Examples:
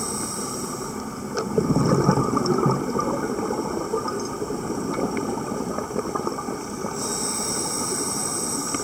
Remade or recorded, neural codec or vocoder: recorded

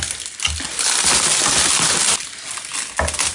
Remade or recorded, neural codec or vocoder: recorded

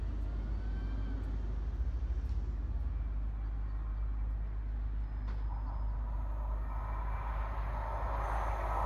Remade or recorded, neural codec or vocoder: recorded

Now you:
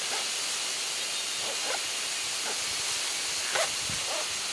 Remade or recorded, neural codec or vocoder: recorded